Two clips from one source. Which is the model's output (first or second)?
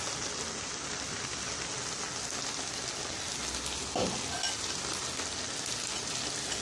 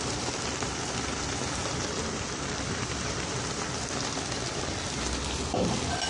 second